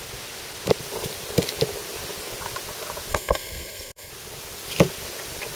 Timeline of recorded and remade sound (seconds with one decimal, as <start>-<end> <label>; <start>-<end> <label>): 0.0-3.1 recorded; 3.1-4.1 remade; 4.1-5.6 recorded